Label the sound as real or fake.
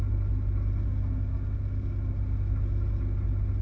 real